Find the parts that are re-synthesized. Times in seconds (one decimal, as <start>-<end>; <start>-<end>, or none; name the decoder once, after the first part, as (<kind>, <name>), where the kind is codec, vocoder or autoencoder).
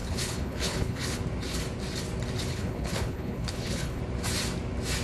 0.0-1.2 (codec, HILCodec); 2.5-4.0